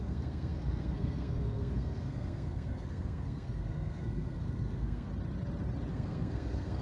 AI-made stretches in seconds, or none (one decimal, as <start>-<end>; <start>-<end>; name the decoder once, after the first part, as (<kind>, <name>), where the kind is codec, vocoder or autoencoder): 0.0-5.1 (codec, SNAC); 5.9-6.8